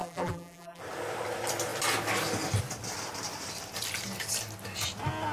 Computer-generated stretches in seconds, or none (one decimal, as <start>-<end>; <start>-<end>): 0.0-0.8